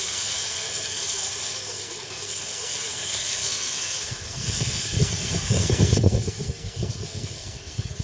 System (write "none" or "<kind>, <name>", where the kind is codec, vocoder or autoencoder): codec, SNAC